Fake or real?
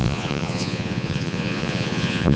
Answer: fake